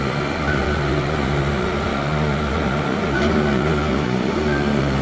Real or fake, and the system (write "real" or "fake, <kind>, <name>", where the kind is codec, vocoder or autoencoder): fake, vocoder, Vocos